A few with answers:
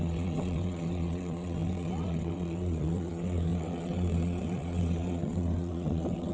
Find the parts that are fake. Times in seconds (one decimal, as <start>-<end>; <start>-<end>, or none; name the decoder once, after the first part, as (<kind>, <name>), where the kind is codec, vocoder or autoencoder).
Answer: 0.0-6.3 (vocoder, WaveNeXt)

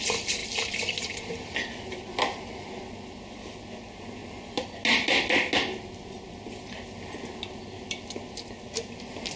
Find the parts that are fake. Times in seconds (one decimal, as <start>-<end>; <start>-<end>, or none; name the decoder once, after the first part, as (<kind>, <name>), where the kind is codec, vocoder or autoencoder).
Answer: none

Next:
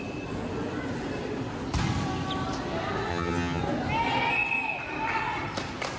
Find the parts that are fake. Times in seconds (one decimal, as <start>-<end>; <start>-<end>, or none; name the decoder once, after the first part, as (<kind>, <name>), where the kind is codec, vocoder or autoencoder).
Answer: 3.1-3.6 (vocoder, HiFi-GAN)

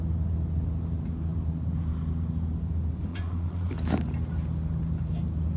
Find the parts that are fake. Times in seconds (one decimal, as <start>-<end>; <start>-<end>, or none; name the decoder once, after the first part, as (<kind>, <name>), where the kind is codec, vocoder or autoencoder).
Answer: 3.1-3.7 (vocoder, Vocos)

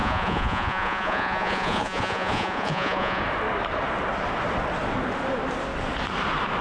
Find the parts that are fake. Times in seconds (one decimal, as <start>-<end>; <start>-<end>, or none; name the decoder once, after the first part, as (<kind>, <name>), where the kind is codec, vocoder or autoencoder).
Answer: 0.0-3.2 (vocoder, Vocos)